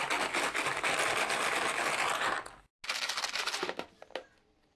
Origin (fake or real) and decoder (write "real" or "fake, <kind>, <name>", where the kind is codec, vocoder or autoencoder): real